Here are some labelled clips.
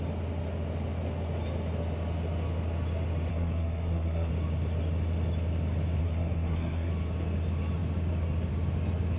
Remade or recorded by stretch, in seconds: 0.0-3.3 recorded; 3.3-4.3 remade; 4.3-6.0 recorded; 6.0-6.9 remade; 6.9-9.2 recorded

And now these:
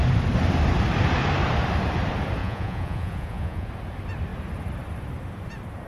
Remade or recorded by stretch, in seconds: 0.0-2.4 recorded; 2.4-3.7 remade; 3.7-5.9 recorded